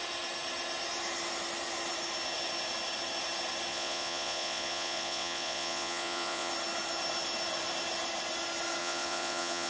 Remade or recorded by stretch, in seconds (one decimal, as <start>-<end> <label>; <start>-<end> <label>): 0.0-3.7 recorded; 3.7-6.5 remade; 6.5-8.8 recorded; 8.8-9.7 remade